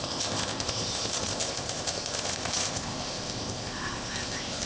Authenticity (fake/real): fake